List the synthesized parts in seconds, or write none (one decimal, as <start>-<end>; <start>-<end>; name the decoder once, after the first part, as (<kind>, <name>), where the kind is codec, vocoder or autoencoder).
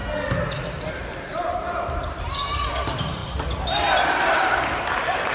0.9-3.2 (vocoder, BigVGAN v2); 4.6-5.3